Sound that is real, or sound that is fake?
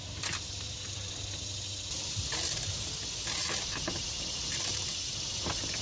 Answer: real